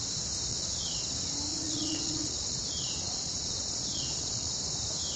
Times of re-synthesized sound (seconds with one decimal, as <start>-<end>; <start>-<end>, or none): 0.5-1.0; 1.5-4.6